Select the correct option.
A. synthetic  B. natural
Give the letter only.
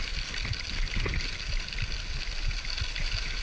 B